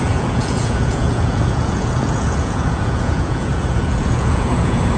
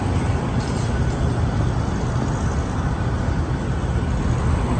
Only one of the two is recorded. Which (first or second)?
second